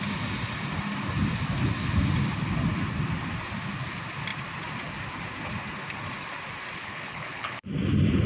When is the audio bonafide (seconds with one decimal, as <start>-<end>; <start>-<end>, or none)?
0.0-6.8; 7.7-8.3